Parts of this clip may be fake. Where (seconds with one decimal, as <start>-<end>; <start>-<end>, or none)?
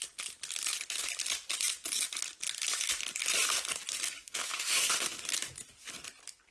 4.2-5.2